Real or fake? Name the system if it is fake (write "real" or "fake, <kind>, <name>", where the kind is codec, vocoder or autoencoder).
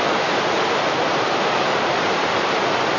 fake, vocoder, BigVGAN v2